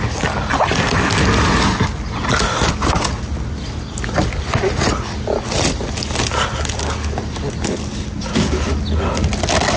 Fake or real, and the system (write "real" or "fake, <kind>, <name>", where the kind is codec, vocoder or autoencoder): real